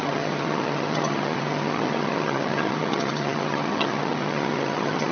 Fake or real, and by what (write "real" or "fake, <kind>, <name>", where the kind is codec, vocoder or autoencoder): fake, vocoder, HiFi-GAN